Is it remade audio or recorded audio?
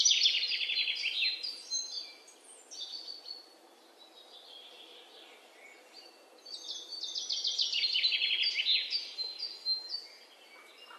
recorded